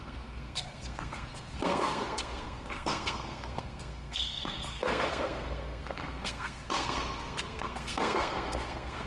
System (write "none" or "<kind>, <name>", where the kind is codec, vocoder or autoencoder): codec, SNAC